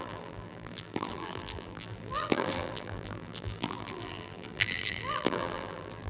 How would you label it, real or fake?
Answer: fake